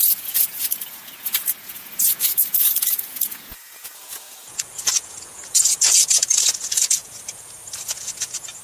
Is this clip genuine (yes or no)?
no